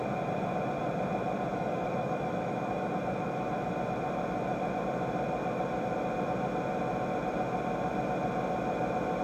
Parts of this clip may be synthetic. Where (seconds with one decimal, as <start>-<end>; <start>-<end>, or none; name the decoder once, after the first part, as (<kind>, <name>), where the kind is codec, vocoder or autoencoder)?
1.5-3.7 (autoencoder, DAC-VAE)